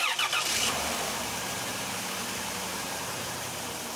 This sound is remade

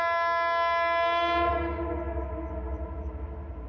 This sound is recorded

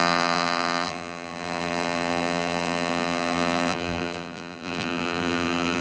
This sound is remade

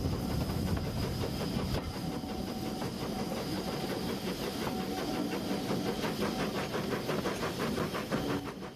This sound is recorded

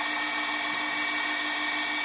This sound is recorded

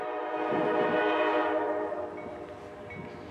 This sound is recorded